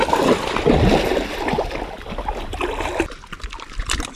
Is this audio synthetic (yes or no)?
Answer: no